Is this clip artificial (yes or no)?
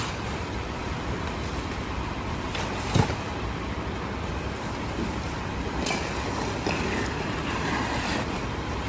yes